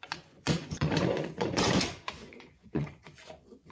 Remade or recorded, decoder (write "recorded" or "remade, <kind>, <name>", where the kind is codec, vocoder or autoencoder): remade, vocoder, Vocos